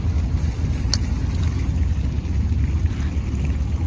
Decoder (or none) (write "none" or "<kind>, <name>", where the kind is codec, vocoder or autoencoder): none